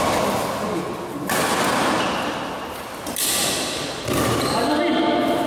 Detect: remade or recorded recorded